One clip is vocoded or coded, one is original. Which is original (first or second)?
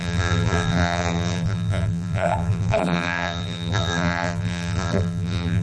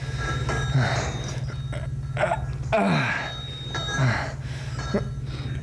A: second